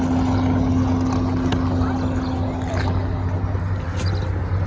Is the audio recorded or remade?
recorded